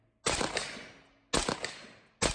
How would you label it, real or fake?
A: real